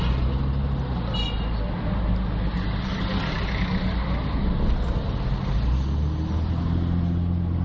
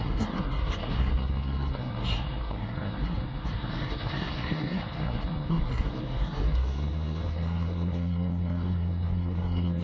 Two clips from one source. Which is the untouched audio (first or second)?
first